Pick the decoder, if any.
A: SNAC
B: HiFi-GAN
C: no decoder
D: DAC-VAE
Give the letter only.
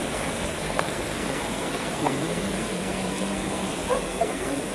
A